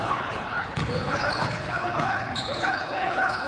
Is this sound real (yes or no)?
no